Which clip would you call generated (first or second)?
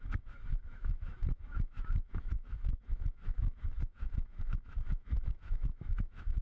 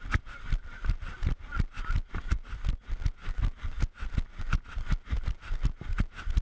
first